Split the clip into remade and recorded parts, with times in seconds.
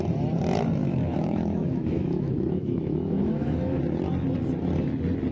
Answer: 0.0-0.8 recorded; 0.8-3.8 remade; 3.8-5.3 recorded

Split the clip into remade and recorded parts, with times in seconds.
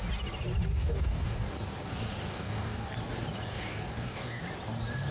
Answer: 0.0-0.7 recorded; 0.7-1.5 remade; 1.5-2.3 recorded; 2.3-2.9 remade; 2.9-3.5 recorded; 3.5-4.4 remade; 4.4-5.1 recorded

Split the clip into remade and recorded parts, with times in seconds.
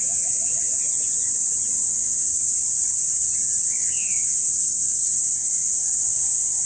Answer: 0.0-0.7 remade; 0.7-1.8 recorded; 1.8-2.3 remade; 2.3-3.6 recorded; 3.6-6.7 remade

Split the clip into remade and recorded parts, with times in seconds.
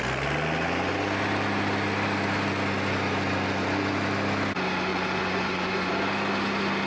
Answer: 0.0-4.9 recorded; 4.9-5.9 remade; 5.9-6.9 recorded